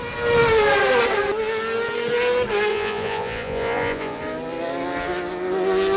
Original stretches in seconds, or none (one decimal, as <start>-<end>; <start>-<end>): 0.0-2.7; 4.2-6.0